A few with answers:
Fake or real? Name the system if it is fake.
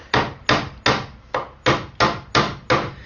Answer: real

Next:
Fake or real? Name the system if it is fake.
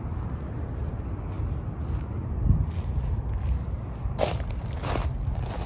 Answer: real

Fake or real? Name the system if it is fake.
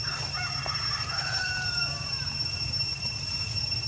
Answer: fake, vocoder, BigVGAN v2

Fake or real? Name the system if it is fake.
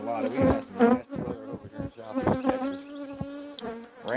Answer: real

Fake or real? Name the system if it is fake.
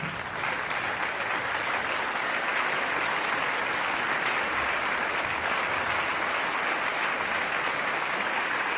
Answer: real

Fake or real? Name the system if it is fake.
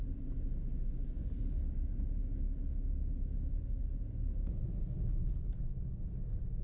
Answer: real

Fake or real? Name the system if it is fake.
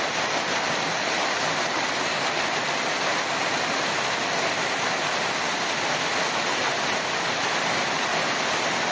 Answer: real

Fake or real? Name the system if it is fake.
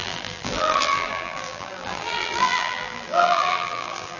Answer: fake, vocoder, BigVGAN v2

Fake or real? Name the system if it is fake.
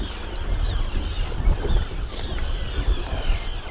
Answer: real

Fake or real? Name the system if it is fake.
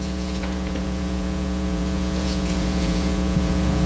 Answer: fake, vocoder, Vocos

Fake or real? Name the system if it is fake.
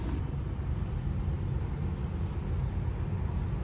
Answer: real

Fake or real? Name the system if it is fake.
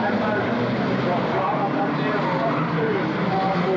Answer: real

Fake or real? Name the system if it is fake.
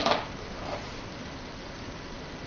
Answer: real